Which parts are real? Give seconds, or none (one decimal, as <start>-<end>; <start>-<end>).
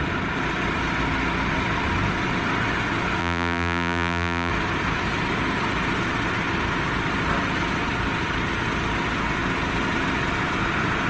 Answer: 0.0-3.2; 4.5-11.1